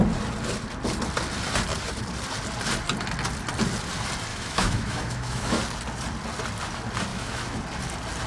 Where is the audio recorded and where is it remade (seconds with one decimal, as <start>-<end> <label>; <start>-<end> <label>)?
0.0-4.3 recorded; 4.3-5.6 remade; 5.6-7.1 recorded; 7.1-7.6 remade; 7.6-8.3 recorded